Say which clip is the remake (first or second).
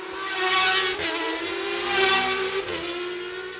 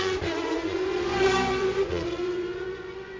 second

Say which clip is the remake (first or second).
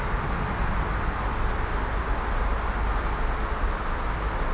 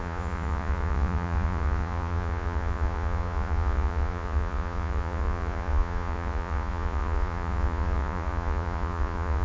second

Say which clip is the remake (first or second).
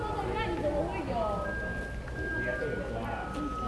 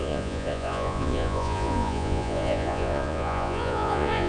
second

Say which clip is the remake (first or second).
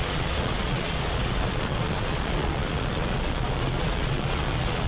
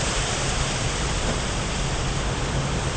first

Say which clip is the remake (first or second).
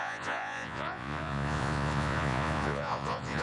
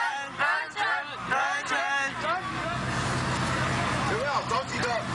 first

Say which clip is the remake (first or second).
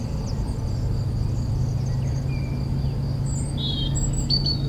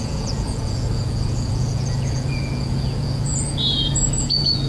second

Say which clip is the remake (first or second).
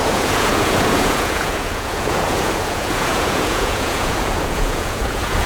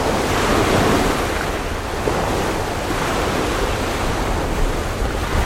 first